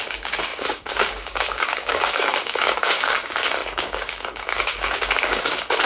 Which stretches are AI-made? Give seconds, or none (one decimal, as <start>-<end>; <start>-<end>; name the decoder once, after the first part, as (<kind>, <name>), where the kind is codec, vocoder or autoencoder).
0.0-5.9 (codec, DAC)